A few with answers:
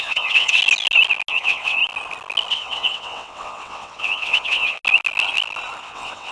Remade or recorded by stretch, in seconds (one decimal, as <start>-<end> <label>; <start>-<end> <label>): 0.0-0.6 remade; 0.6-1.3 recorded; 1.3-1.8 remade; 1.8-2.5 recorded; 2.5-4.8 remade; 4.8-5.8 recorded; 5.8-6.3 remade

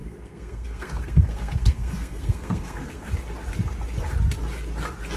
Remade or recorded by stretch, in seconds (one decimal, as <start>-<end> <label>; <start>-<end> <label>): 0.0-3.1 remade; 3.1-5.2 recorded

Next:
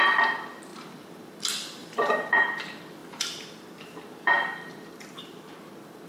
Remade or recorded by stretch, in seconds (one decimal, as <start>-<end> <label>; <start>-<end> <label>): 0.0-0.7 recorded; 0.7-1.2 remade; 1.2-1.8 recorded; 1.8-2.4 remade; 2.4-3.0 recorded; 3.0-5.5 remade; 5.5-6.1 recorded

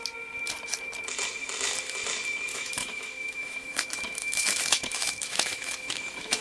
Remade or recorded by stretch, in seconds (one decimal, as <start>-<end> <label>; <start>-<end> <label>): 0.0-2.5 recorded; 2.5-6.4 remade

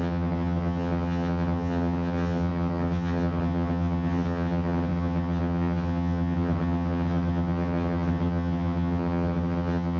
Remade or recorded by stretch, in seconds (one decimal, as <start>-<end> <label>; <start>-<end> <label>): 0.0-10.0 remade